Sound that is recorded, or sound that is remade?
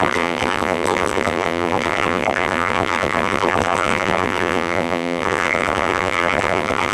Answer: remade